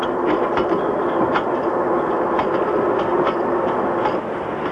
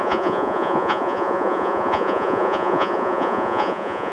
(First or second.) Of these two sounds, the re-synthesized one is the second